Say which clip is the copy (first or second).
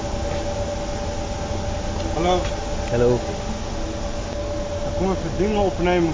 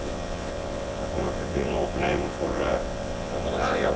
second